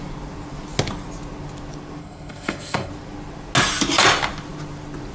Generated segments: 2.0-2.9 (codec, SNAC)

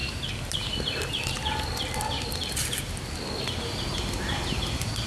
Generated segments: none

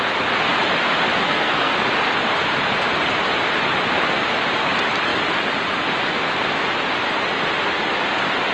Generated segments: 1.2-1.7 (codec, SNAC)

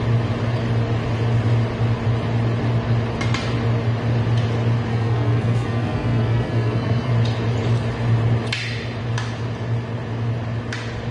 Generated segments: 4.9-7.1 (codec, SNAC)

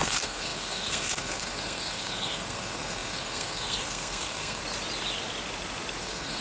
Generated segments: 0.0-4.6 (codec, SNAC); 6.0-6.4